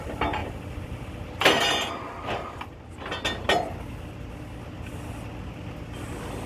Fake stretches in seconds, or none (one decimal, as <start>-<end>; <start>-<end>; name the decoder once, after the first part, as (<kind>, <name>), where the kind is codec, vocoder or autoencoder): none